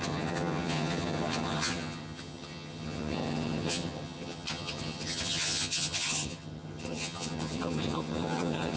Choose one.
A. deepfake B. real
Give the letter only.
A